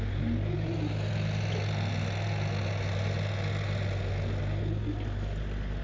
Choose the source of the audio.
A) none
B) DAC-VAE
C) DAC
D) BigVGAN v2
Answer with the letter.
A